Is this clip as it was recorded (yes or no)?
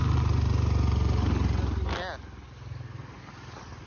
yes